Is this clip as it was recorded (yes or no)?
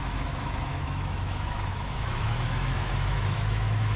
no